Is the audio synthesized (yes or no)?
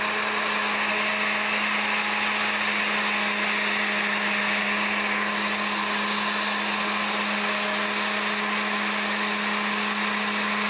no